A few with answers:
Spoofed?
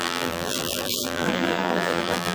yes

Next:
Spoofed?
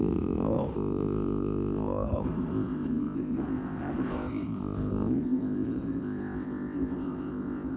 yes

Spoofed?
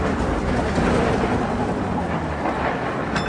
no